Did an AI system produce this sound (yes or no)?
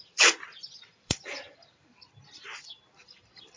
yes